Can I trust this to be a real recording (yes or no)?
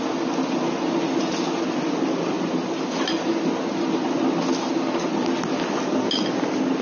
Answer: yes